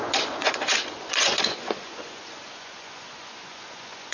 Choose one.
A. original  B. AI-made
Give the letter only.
B